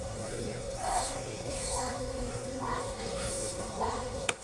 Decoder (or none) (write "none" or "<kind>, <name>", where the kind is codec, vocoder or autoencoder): codec, SNAC